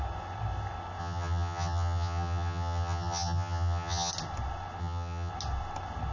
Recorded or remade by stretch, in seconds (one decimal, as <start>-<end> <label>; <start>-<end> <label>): 0.0-1.0 recorded; 1.0-4.1 remade; 4.1-4.8 recorded; 4.8-5.3 remade; 5.3-6.1 recorded